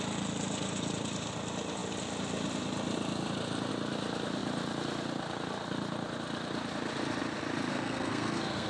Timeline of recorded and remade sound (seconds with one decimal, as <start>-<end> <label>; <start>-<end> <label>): 0.0-7.7 recorded; 7.7-8.7 remade